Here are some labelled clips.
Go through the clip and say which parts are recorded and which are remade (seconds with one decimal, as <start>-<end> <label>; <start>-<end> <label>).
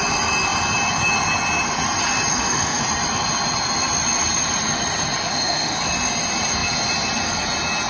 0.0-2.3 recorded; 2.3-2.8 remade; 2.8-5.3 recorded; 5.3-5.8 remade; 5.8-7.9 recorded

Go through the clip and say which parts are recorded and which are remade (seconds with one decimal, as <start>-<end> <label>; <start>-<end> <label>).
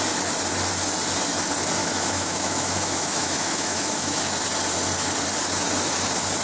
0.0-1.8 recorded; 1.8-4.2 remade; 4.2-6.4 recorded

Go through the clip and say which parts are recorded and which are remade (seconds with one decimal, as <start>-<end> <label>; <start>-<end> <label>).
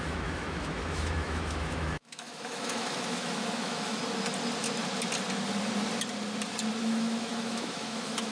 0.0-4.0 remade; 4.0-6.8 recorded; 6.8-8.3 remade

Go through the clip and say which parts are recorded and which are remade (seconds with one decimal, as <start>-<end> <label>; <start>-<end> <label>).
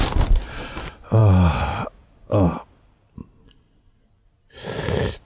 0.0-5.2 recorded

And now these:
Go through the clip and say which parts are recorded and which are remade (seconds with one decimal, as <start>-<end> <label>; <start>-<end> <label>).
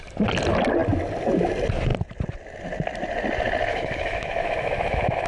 0.0-3.7 recorded; 3.7-5.3 remade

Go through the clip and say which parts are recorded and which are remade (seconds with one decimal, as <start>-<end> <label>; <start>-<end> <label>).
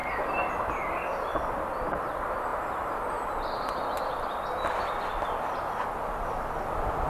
0.0-7.1 recorded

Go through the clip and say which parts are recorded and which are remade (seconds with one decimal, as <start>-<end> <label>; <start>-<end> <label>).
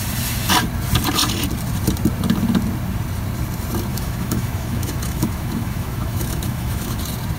0.0-3.9 recorded; 3.9-7.0 remade; 7.0-7.4 recorded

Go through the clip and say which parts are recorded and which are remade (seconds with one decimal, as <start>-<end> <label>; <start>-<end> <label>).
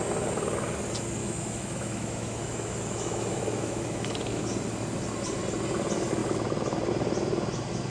0.0-1.2 recorded; 1.2-4.4 remade; 4.4-7.9 recorded